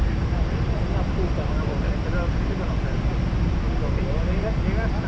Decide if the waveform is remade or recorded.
recorded